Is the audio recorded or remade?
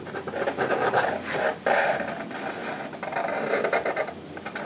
recorded